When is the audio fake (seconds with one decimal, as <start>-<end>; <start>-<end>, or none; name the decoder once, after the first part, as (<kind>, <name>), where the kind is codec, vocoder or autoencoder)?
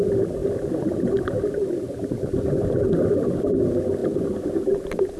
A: none